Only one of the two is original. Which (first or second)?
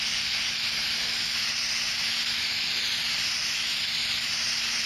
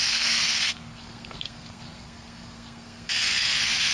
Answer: first